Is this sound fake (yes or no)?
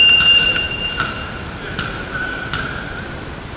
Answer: yes